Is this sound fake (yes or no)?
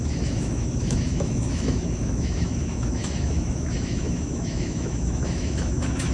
yes